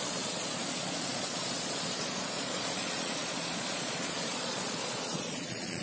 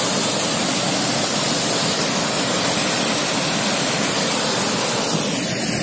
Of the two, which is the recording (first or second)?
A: second